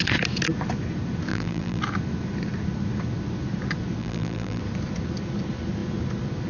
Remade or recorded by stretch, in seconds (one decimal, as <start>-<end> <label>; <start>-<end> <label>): 0.0-1.3 recorded; 1.3-1.8 remade; 1.8-4.0 recorded; 4.0-4.6 remade; 4.6-6.5 recorded